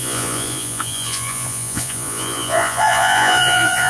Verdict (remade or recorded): remade